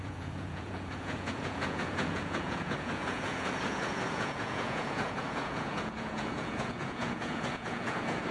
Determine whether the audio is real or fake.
fake